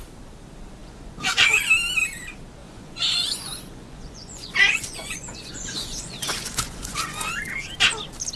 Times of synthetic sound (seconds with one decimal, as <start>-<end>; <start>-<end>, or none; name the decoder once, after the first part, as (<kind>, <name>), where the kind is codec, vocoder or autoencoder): 0.8-1.5 (vocoder, Vocos); 2.6-7.3